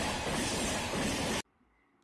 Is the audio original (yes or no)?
yes